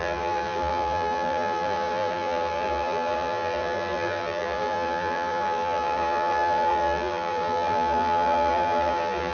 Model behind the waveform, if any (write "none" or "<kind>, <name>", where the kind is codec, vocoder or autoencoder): vocoder, BigVGAN v2